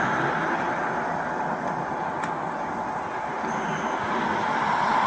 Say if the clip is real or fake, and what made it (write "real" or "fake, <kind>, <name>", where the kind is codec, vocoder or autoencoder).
real